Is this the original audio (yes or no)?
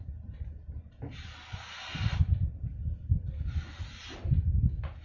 yes